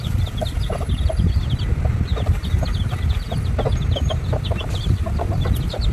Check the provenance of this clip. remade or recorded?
remade